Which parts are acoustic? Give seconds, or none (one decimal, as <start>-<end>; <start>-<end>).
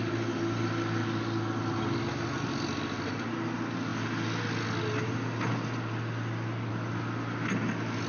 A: 0.0-8.1